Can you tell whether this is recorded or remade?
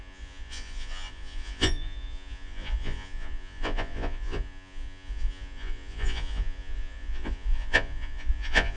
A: remade